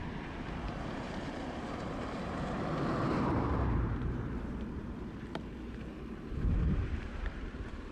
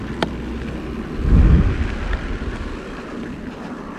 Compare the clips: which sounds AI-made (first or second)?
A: first